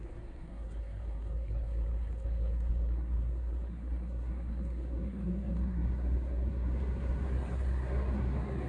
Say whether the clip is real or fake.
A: fake